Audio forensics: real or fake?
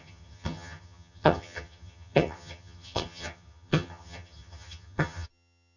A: fake